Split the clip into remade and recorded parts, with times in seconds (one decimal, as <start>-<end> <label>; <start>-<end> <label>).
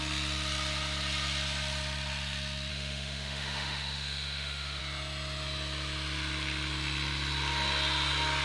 0.0-2.7 recorded; 2.7-4.8 remade; 4.8-8.4 recorded